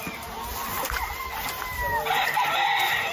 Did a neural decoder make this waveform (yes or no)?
no